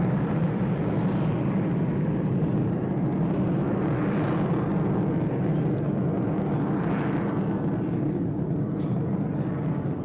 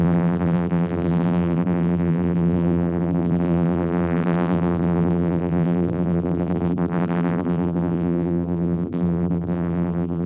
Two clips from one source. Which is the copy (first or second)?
second